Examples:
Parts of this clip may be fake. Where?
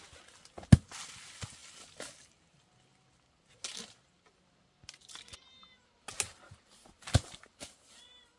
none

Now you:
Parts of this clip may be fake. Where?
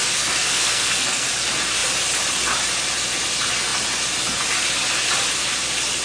0.0-1.3 (codec, SNAC)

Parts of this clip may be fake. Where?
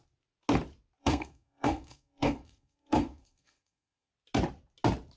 1.0-4.1 (codec, SNAC)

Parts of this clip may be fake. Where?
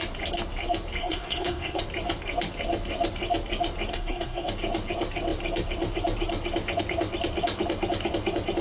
1.0-1.8 (codec, SNAC); 3.9-4.5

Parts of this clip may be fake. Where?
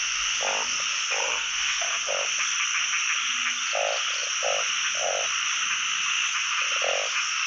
1.2-2.1 (codec, SNAC)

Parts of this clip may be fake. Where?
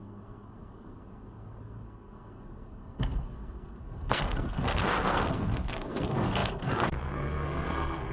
0.0-8.1 (codec, SNAC)